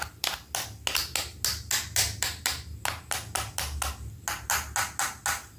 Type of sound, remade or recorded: recorded